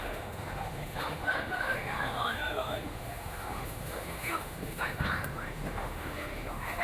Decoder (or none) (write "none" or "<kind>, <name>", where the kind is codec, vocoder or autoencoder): autoencoder, DAC-VAE